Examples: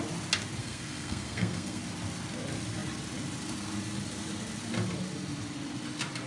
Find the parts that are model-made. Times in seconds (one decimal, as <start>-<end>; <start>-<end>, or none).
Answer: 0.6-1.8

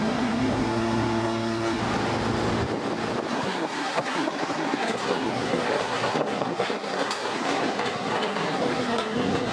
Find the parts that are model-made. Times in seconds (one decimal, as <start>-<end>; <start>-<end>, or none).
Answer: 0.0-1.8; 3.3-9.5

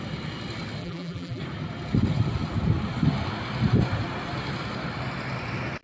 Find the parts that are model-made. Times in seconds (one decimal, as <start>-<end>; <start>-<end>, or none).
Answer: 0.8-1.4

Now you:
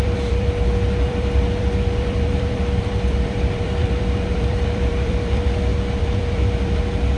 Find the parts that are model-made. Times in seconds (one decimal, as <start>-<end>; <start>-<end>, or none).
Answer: 0.0-7.2

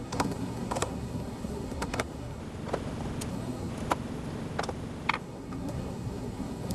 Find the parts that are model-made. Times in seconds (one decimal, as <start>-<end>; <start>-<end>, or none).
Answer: 0.0-2.4; 3.3-3.7; 5.2-6.7

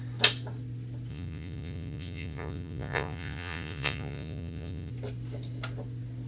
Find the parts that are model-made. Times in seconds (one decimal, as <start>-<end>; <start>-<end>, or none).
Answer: 1.1-4.9

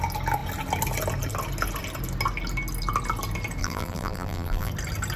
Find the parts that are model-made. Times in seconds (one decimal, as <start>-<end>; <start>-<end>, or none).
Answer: 3.6-4.7

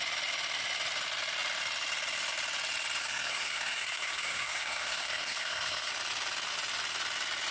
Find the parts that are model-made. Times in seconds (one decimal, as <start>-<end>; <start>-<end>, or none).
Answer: 3.0-5.9